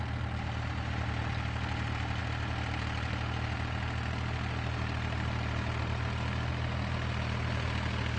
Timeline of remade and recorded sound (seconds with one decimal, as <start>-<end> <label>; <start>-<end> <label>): 0.0-8.2 recorded